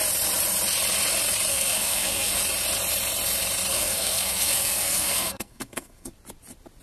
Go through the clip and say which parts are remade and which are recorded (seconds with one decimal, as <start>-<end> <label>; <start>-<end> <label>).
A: 0.0-1.5 recorded; 1.5-2.4 remade; 2.4-3.7 recorded; 3.7-6.1 remade; 6.1-6.8 recorded

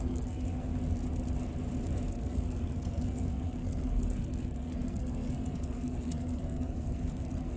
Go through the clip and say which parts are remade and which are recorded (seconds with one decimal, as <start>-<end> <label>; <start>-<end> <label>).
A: 0.0-0.7 remade; 0.7-2.1 recorded; 2.1-7.6 remade

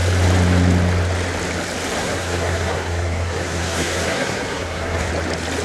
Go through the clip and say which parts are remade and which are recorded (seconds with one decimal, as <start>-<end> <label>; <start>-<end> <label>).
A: 0.0-2.0 recorded; 2.0-5.1 remade; 5.1-5.6 recorded

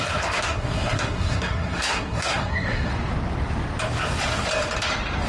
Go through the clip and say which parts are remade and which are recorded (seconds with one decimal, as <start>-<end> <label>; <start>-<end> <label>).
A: 0.0-2.9 remade; 2.9-5.3 recorded

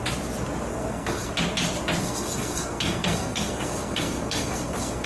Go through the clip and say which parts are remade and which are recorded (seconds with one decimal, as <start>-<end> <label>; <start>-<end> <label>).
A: 0.0-0.7 recorded; 0.7-1.3 remade; 1.3-2.0 recorded; 2.0-5.1 remade